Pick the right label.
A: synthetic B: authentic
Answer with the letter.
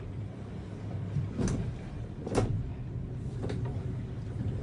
B